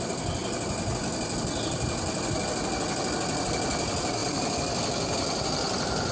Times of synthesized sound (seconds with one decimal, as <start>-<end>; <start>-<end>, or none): none